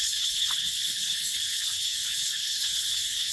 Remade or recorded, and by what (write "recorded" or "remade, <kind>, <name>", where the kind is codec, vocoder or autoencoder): remade, codec, HILCodec